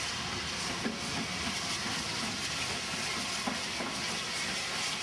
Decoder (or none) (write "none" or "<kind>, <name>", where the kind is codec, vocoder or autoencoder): none